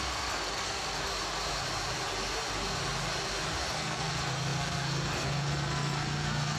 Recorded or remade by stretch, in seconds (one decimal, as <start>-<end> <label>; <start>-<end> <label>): 0.0-1.1 remade; 1.1-3.7 recorded; 3.7-6.6 remade